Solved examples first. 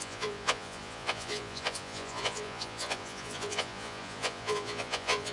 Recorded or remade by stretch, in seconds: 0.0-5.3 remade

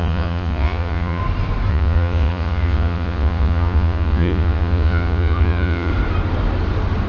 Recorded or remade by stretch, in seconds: 0.0-1.2 remade; 1.2-1.7 recorded; 1.7-5.9 remade; 5.9-7.1 recorded

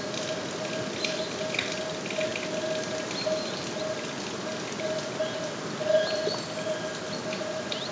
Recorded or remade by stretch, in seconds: 0.0-7.9 recorded

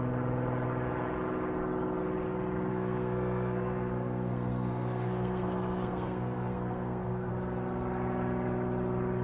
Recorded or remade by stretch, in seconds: 0.0-2.7 recorded; 2.7-7.3 remade; 7.3-9.2 recorded

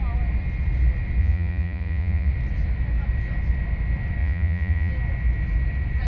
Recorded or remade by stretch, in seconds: 0.0-1.2 recorded; 1.2-2.3 remade; 2.3-4.2 recorded; 4.2-4.9 remade; 4.9-6.1 recorded

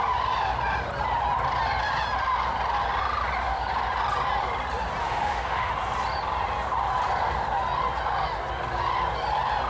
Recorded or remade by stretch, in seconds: 0.0-5.0 recorded; 5.0-5.7 remade; 5.7-9.7 recorded

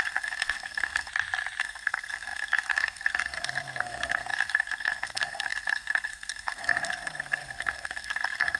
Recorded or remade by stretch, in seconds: 0.0-1.1 remade; 1.1-1.6 recorded; 1.6-8.6 remade

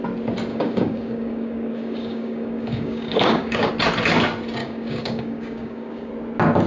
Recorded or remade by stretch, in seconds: 0.0-0.5 recorded; 0.5-3.7 remade; 3.7-4.6 recorded; 4.6-6.1 remade; 6.1-6.7 recorded